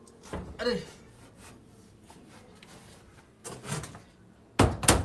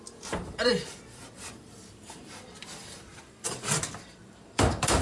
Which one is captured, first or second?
first